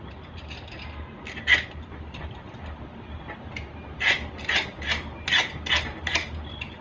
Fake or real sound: real